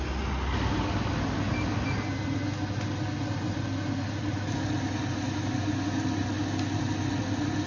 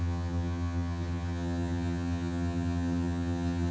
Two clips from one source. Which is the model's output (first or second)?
second